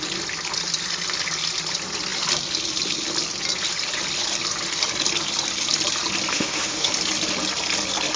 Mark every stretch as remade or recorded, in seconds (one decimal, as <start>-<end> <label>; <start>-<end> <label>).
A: 0.0-6.3 recorded; 6.3-6.9 remade; 6.9-8.2 recorded